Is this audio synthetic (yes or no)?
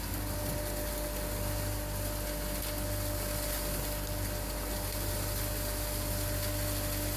no